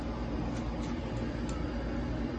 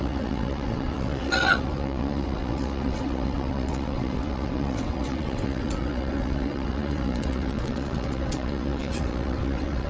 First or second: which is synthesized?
second